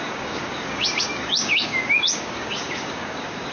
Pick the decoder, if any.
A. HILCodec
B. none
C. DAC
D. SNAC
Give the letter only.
C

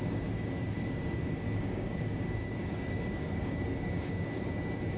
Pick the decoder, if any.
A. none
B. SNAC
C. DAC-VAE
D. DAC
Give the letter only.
D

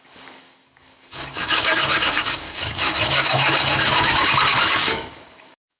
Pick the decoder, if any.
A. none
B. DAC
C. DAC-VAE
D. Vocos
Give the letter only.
B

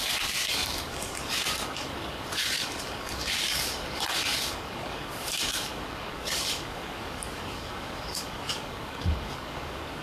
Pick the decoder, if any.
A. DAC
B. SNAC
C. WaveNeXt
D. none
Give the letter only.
A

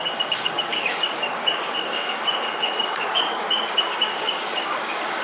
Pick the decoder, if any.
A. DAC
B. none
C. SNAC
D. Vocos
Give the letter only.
A